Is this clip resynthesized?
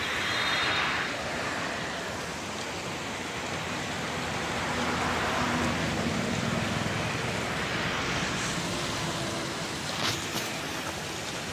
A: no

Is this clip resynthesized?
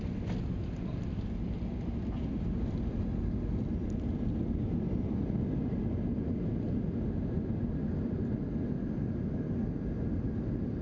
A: no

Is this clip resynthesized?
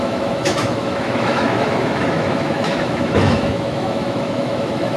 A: yes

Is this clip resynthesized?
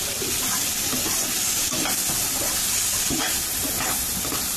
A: no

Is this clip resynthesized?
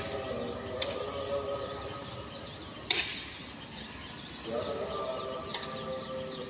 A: no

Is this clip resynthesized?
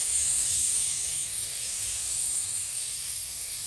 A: yes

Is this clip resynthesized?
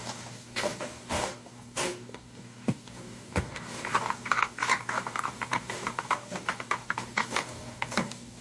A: yes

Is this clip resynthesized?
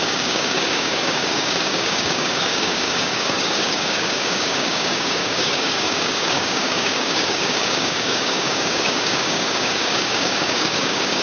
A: yes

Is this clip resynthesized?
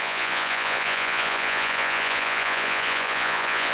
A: yes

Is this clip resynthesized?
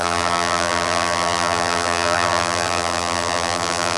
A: yes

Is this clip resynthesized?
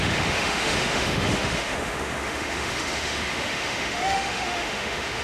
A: yes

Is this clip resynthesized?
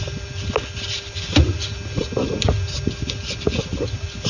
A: no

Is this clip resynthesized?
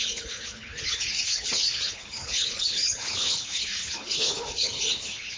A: yes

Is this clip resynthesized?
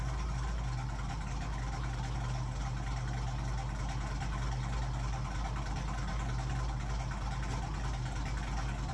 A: no